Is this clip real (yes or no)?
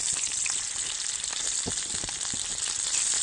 yes